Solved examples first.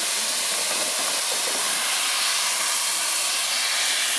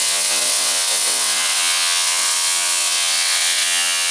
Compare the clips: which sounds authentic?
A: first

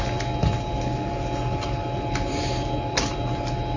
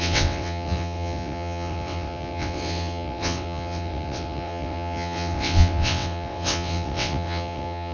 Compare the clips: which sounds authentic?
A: first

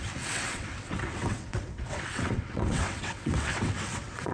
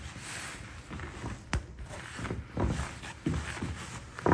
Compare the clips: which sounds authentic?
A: second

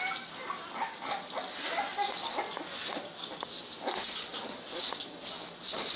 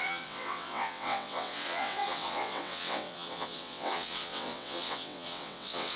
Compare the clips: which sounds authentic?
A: first